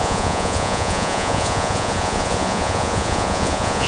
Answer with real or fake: fake